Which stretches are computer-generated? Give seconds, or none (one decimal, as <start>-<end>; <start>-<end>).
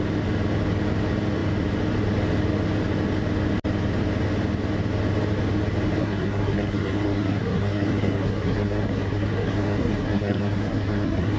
6.0-11.4